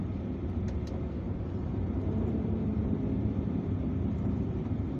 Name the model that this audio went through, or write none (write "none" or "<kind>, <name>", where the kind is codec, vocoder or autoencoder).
vocoder, BigVGAN v2